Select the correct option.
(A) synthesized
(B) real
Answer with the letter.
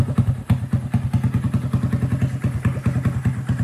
B